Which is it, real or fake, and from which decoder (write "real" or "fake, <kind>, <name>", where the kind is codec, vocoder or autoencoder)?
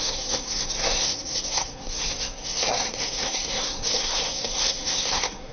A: fake, codec, SNAC